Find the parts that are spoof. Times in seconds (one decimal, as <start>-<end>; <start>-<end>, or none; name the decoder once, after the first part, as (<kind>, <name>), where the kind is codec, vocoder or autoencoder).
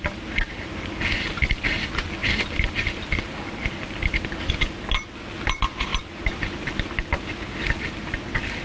none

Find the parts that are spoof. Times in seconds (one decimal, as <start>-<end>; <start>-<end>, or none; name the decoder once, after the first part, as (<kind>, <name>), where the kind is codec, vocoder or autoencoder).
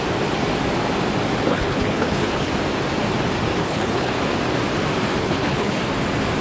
1.5-2.5 (codec, HILCodec); 3.6-4.1; 5.2-5.8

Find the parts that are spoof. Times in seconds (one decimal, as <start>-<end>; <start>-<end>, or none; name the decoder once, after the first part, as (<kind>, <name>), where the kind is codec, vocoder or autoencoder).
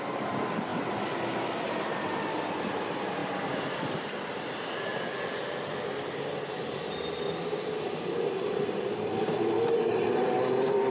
0.0-0.7 (vocoder, BigVGAN v2); 2.6-4.9; 6.6-10.9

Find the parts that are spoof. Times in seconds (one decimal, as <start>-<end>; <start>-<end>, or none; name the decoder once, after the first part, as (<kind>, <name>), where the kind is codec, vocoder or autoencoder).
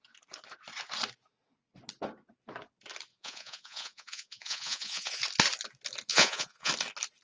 3.1-5.2 (vocoder, Vocos); 6.1-6.7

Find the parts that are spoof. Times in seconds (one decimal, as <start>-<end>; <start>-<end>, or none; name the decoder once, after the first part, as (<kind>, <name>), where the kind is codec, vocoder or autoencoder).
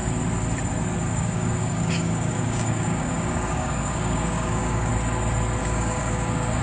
1.1-4.9 (codec, DAC); 5.6-6.6